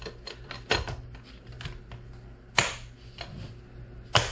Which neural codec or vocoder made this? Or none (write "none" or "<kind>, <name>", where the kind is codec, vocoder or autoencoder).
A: none